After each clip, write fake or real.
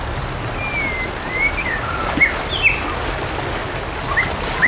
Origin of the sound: real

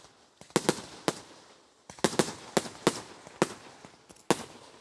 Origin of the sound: real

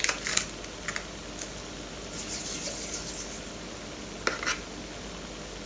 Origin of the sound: real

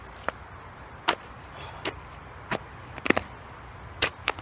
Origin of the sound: real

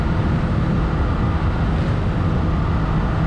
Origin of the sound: real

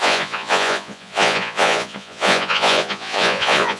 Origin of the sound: fake